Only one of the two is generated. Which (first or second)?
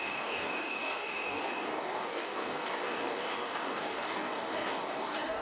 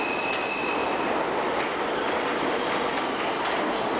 first